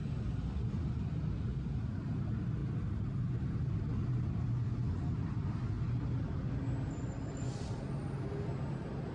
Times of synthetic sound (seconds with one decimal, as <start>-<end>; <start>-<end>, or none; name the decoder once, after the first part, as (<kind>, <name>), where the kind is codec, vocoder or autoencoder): none